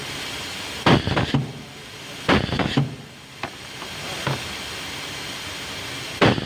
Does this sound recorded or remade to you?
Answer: recorded